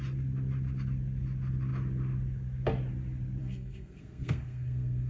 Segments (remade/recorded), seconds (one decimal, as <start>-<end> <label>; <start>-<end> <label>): 0.0-3.4 recorded; 3.4-5.1 remade

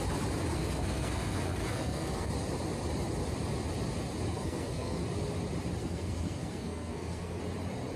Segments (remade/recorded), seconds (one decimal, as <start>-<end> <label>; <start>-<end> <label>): 0.0-0.5 recorded; 0.5-2.3 remade; 2.3-4.3 recorded; 4.3-5.0 remade; 5.0-5.8 recorded; 5.8-7.4 remade; 7.4-8.0 recorded

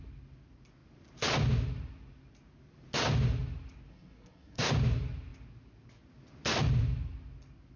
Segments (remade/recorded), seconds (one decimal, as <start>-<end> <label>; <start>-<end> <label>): 0.0-3.9 recorded; 3.9-4.7 remade; 4.7-7.8 recorded

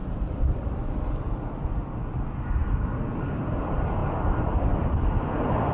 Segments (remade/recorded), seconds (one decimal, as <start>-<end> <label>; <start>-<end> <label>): 0.0-5.7 recorded

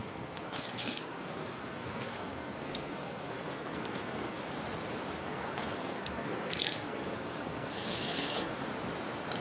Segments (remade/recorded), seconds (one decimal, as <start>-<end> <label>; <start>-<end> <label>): 0.0-4.4 remade; 4.4-5.2 recorded; 5.2-8.6 remade; 8.6-9.4 recorded

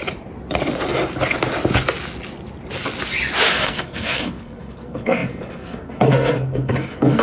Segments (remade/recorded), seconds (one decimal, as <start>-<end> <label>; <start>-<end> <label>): 0.0-3.5 recorded; 3.5-7.2 remade